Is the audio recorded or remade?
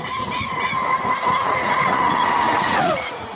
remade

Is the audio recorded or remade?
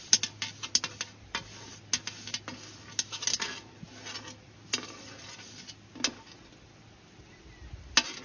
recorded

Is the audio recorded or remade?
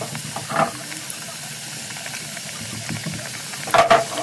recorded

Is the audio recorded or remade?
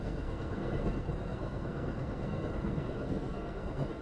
remade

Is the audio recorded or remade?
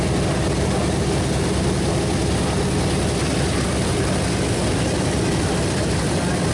recorded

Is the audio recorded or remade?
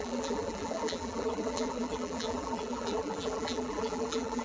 remade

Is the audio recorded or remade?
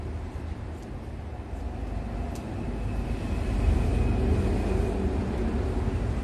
recorded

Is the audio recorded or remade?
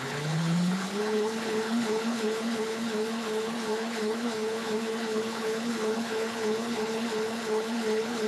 remade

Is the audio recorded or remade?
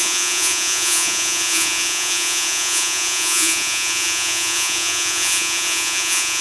remade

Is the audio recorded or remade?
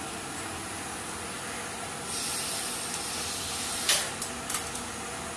recorded